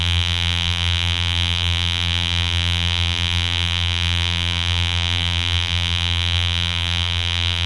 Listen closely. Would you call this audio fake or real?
fake